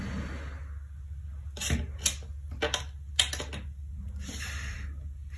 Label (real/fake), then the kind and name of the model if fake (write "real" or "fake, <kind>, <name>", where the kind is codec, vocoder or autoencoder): real